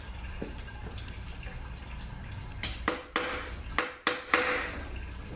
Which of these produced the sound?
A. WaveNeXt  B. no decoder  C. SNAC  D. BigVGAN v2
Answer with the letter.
B